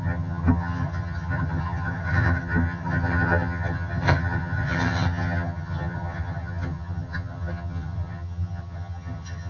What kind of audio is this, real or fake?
fake